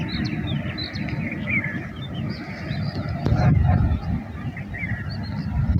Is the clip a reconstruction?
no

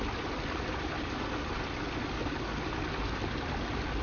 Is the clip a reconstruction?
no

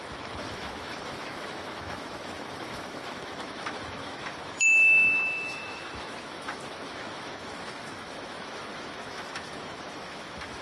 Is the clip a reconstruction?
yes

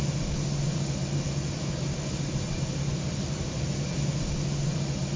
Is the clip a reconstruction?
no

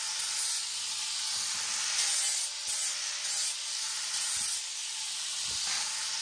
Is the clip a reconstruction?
no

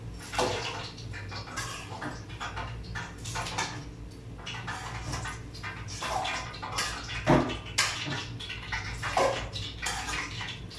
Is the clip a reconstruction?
no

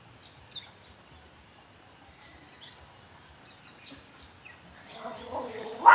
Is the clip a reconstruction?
no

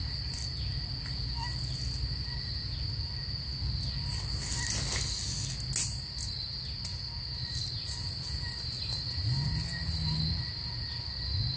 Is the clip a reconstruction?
no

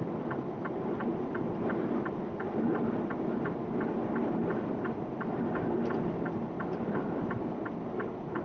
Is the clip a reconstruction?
no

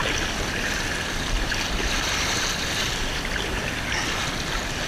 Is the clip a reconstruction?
no